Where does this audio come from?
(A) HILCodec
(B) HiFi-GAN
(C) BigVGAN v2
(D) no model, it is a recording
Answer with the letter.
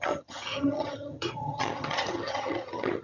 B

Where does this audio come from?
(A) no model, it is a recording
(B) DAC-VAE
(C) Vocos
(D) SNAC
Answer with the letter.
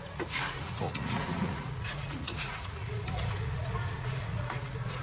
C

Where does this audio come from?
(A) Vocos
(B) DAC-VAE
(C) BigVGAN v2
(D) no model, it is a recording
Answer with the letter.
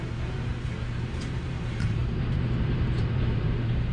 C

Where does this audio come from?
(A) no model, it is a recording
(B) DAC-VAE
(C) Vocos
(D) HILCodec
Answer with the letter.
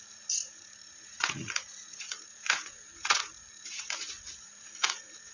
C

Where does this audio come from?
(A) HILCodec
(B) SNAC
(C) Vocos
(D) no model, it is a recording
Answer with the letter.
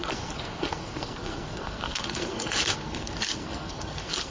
B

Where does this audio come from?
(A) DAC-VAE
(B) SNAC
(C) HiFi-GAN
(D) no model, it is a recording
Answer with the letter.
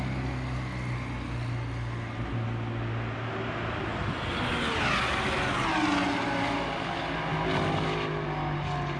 D